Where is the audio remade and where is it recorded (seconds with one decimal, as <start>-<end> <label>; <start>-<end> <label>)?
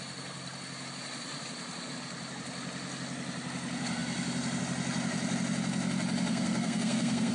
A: 0.0-6.3 recorded; 6.3-7.3 remade